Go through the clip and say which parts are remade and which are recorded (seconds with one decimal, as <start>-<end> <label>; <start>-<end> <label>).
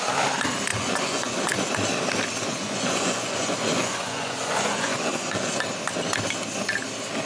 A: 0.0-0.7 recorded; 0.7-1.4 remade; 1.4-2.5 recorded; 2.5-5.5 remade; 5.5-7.3 recorded